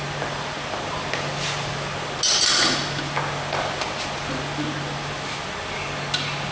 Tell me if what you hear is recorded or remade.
recorded